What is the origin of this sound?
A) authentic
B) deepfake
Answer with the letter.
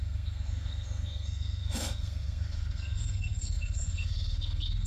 B